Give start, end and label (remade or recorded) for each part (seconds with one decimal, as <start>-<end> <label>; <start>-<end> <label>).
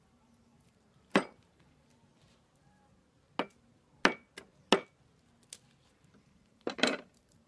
0.0-2.0 remade; 2.0-5.9 recorded; 5.9-7.5 remade